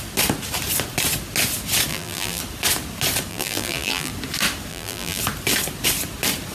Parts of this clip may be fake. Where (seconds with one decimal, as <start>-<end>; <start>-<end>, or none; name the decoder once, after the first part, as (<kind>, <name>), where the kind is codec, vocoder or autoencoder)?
1.9-2.4 (vocoder, BigVGAN v2); 3.3-4.1; 4.7-5.2